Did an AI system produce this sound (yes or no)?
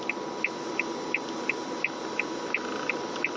no